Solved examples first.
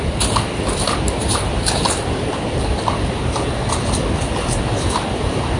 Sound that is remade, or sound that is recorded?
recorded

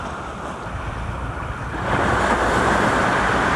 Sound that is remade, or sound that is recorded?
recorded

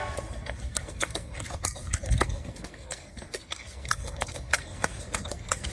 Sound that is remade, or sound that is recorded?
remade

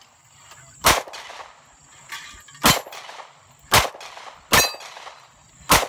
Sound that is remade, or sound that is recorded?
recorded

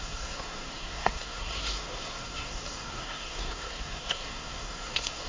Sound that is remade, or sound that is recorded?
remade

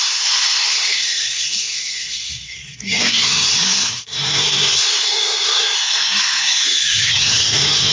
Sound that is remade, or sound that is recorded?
remade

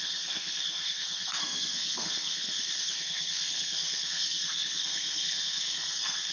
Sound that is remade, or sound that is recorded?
remade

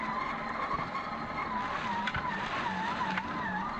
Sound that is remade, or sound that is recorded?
recorded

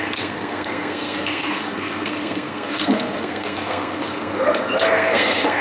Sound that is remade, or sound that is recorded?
remade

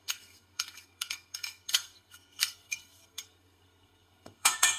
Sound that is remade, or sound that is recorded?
remade